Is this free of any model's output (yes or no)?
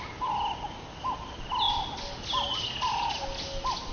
yes